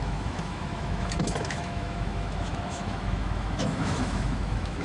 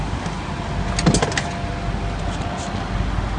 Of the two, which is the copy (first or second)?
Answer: first